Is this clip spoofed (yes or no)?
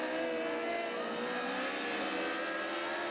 no